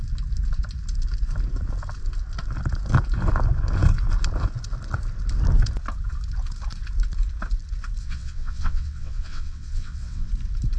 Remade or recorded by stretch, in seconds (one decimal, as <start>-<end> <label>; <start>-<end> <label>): 0.0-8.0 recorded; 8.0-10.3 remade; 10.3-10.8 recorded